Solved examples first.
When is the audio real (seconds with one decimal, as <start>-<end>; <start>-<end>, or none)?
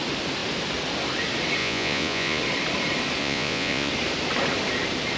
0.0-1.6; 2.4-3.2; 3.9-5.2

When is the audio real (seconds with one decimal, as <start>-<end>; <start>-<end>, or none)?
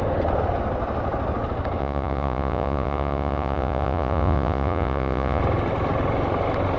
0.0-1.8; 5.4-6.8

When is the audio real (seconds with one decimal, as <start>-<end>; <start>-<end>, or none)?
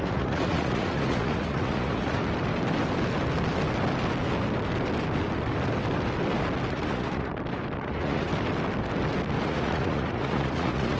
2.2-6.7; 7.3-7.8; 8.3-9.4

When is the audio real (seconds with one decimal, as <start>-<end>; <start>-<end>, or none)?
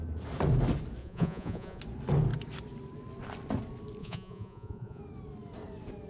0.0-1.0; 1.8-4.0; 5.0-6.1